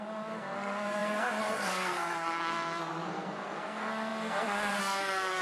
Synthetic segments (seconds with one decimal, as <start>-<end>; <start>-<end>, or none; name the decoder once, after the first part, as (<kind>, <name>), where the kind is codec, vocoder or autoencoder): 0.0-5.4 (codec, SNAC)